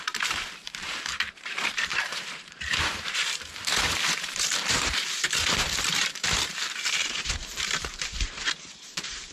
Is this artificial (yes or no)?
yes